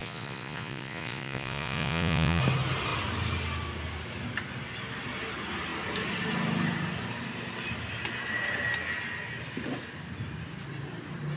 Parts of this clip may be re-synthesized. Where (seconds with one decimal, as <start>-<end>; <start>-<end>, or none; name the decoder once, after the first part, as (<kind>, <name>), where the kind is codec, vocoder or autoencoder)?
0.0-2.4 (vocoder, Vocos)